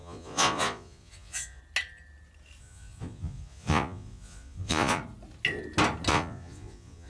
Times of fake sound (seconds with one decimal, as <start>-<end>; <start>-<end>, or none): 0.0-1.6; 2.6-5.0; 6.1-7.1